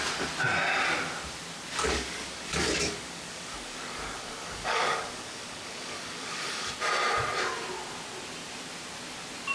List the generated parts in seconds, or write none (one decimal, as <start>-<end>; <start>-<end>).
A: 1.8-6.7